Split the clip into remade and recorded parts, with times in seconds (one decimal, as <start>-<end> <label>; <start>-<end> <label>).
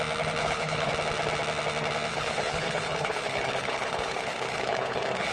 0.0-0.4 recorded; 0.4-0.9 remade; 0.9-2.1 recorded; 2.1-5.3 remade